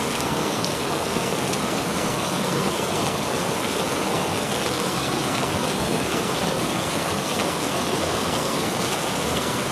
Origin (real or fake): fake